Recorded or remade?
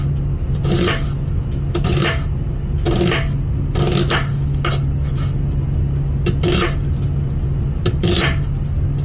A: recorded